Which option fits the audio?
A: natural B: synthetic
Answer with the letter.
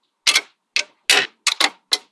A